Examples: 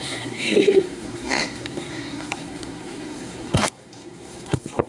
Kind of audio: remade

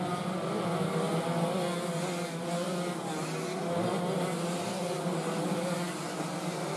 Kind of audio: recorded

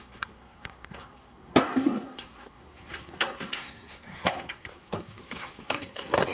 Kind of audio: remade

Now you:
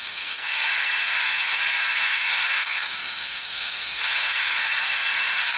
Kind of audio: remade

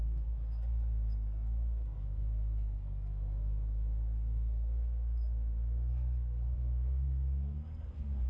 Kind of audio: remade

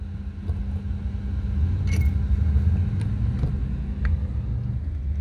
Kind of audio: recorded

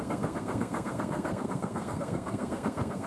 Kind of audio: remade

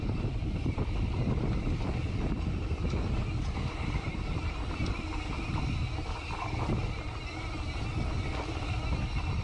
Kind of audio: recorded